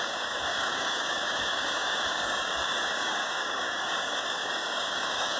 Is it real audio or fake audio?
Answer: fake